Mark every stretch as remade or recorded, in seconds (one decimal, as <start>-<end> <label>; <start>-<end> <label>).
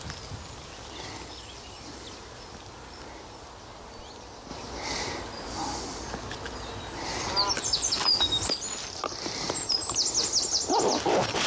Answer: 0.0-11.5 recorded